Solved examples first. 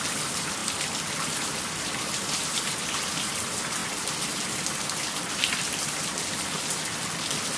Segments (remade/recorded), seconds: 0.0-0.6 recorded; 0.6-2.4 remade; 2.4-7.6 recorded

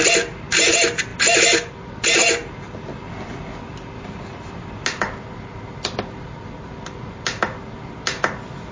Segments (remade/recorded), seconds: 0.0-8.7 recorded

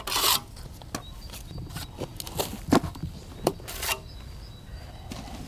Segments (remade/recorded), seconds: 0.0-5.5 recorded

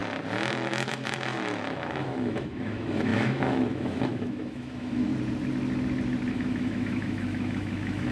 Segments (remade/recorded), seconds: 0.0-0.5 recorded; 0.5-5.1 remade; 5.1-6.3 recorded; 6.3-8.1 remade

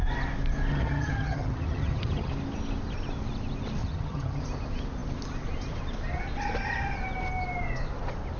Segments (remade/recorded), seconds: 0.0-0.7 recorded; 0.7-2.3 remade; 2.3-3.8 recorded; 3.8-4.4 remade; 4.4-8.4 recorded

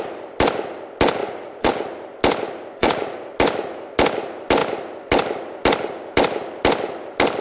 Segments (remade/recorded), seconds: 0.0-1.2 recorded; 1.2-1.7 remade; 1.7-2.8 recorded; 2.8-3.3 remade; 3.3-7.4 recorded